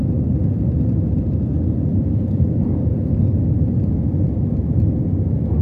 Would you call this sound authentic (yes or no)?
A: yes